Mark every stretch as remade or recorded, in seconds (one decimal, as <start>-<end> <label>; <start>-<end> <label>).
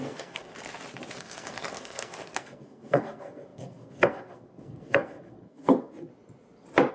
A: 0.0-0.5 remade; 0.5-1.1 recorded; 1.1-6.1 remade; 6.1-6.9 recorded